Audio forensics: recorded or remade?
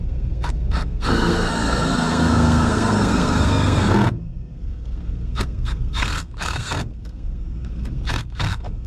remade